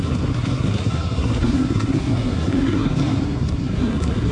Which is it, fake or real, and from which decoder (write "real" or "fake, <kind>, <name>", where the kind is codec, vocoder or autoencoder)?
fake, codec, SNAC